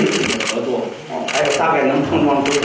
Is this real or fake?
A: real